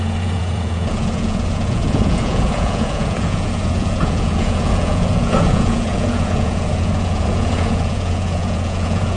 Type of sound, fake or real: fake